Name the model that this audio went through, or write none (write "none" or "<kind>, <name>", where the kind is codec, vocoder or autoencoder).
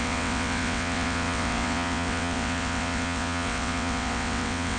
vocoder, WaveNeXt